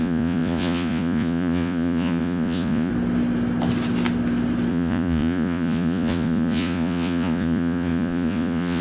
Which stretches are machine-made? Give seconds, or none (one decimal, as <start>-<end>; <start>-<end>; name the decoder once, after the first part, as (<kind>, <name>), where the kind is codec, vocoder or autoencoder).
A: 0.0-2.9 (vocoder, Vocos); 4.7-8.8